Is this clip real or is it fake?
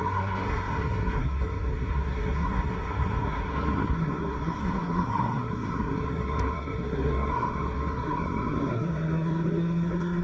fake